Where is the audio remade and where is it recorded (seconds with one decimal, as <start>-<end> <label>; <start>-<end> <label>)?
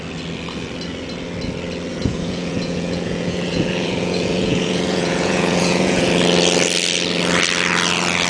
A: 0.0-1.9 recorded; 1.9-6.1 remade; 6.1-8.3 recorded